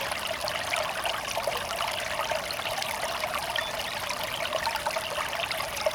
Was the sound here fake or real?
real